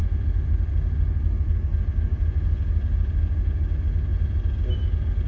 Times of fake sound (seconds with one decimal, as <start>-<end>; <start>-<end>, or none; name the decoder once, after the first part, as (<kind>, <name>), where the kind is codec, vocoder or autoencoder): none